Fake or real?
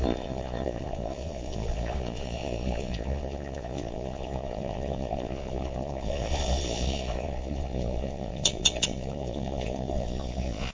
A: fake